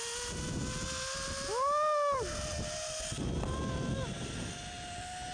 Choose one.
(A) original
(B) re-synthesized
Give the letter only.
A